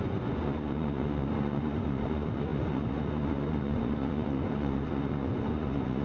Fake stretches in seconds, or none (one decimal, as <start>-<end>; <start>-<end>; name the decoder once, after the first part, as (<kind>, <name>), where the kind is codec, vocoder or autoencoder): 0.0-6.0 (vocoder, Vocos)